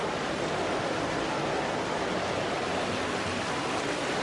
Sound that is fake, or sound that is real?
fake